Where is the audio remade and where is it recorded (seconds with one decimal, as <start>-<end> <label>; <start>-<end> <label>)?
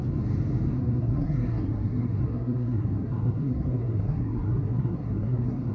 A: 0.0-0.7 recorded; 0.7-5.7 remade